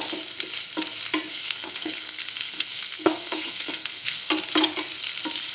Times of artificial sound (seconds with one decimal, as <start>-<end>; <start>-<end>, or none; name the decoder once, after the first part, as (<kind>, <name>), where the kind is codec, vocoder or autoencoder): 1.3-4.3 (codec, SNAC)